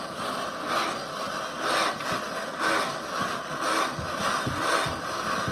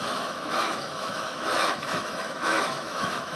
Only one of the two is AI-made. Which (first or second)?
second